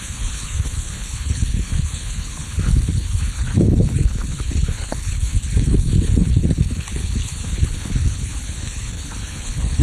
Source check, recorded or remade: remade